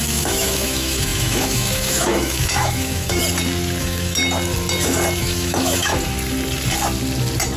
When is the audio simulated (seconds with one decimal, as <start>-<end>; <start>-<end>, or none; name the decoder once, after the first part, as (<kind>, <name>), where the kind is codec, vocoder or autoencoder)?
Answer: 0.0-3.2 (autoencoder, DAC-VAE); 3.8-4.2; 5.2-5.9